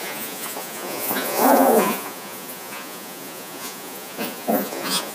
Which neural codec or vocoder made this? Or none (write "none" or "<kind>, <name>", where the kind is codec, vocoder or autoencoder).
vocoder, Vocos